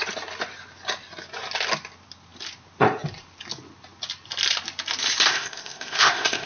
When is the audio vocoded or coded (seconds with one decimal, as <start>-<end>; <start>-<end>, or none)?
5.3-6.5